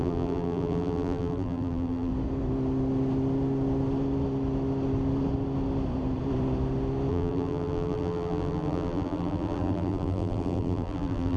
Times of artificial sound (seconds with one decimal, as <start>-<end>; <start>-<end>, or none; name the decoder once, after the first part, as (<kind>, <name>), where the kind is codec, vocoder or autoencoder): 0.0-2.1 (vocoder, BigVGAN v2); 7.1-11.4